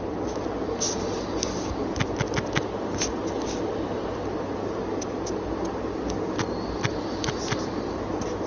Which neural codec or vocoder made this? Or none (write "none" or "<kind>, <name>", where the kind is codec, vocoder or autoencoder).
none